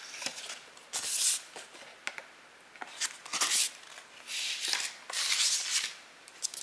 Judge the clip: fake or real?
real